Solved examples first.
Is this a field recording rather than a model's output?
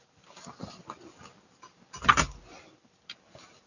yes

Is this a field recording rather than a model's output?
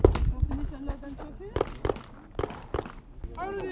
yes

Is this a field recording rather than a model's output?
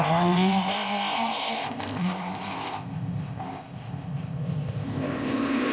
no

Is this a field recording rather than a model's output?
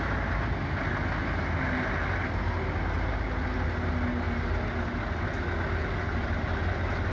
yes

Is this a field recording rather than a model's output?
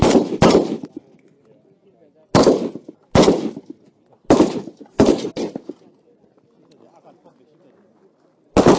yes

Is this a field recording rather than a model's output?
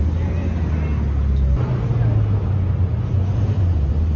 yes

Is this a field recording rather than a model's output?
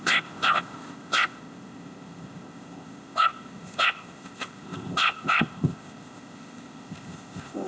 no